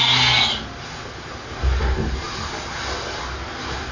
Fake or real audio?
real